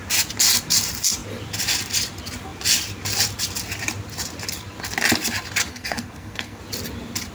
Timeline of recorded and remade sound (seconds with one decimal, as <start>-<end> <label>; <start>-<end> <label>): 0.0-5.7 recorded; 5.7-6.6 remade; 6.6-7.3 recorded